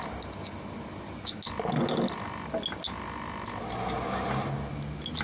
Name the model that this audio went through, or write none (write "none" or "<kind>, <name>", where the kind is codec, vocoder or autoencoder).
none